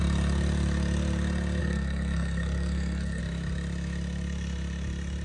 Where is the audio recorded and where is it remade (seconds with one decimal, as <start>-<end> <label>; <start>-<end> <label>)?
0.0-1.6 recorded; 1.6-3.2 remade; 3.2-5.2 recorded